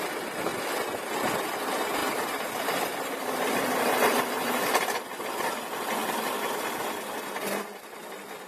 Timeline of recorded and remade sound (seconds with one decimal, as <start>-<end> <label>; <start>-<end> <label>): 0.0-2.0 recorded; 2.0-5.3 remade; 5.3-6.0 recorded; 6.0-8.5 remade